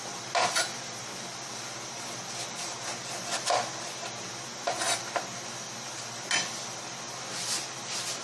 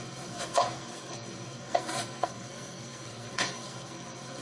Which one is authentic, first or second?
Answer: first